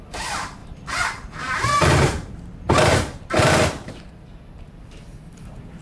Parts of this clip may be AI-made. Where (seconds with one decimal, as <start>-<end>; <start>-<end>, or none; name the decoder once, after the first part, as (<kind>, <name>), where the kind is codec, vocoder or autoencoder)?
0.6-4.1 (vocoder, BigVGAN v2)